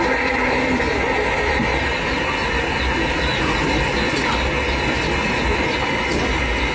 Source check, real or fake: real